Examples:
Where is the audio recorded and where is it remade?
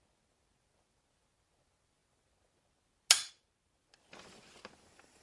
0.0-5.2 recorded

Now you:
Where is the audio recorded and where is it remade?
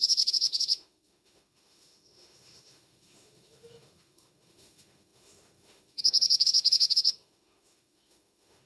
0.0-8.7 remade